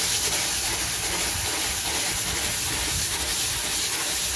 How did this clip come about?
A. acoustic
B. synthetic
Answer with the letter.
A